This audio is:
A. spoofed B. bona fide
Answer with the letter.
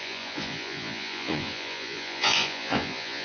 A